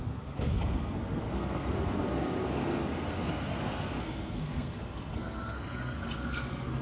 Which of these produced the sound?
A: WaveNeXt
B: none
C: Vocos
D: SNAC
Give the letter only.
D